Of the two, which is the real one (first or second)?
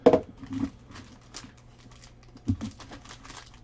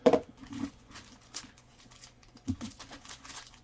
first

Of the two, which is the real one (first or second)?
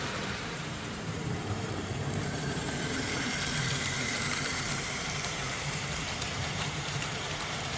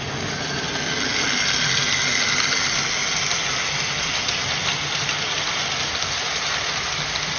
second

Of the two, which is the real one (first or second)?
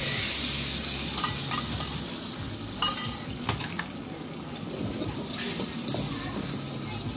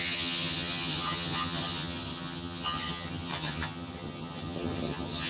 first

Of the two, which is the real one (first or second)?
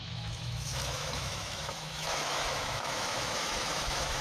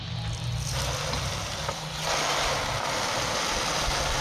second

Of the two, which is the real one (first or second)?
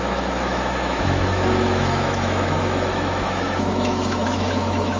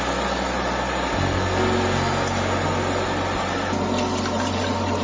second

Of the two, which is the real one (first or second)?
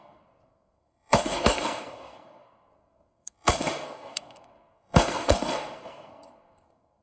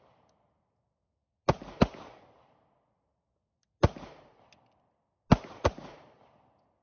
second